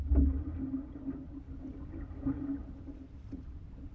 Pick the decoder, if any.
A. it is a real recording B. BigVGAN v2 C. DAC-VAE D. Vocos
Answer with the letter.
A